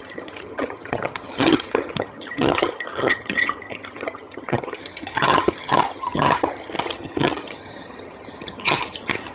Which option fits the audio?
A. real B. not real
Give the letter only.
B